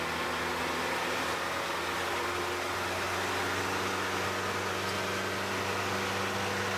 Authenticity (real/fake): real